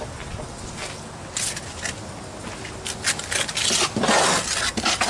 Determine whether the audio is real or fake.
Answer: real